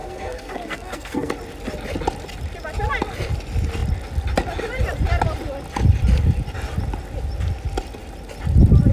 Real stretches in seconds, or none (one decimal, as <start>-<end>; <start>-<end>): 1.3-8.9